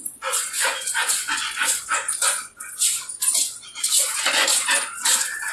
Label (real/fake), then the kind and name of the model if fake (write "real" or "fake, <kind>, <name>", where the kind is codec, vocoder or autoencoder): fake, vocoder, Vocos